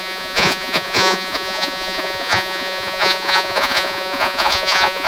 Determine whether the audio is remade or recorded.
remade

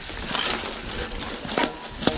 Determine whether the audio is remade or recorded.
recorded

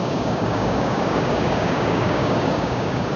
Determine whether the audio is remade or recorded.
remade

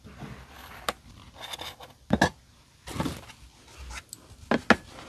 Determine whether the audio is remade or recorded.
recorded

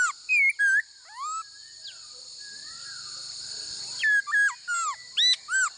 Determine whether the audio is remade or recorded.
recorded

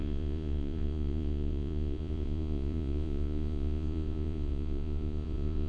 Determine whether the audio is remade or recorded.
remade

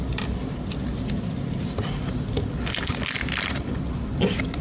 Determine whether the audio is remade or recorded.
recorded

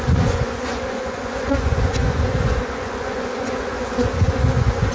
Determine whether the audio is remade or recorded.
remade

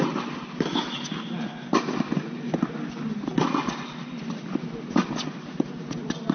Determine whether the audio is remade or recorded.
recorded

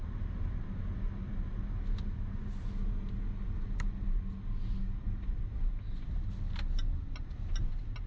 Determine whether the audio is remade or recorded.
recorded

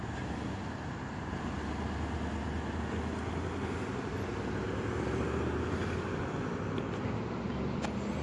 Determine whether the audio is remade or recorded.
recorded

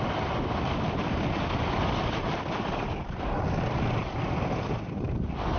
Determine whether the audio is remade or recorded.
recorded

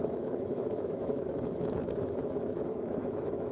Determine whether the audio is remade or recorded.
remade